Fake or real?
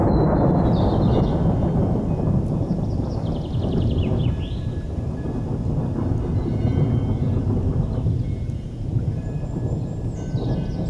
real